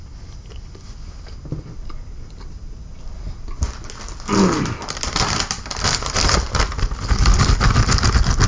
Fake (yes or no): no